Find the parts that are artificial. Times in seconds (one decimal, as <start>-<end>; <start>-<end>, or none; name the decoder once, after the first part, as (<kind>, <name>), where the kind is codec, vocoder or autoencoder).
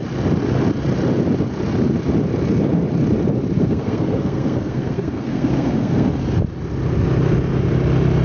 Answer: 3.6-6.1 (codec, SNAC)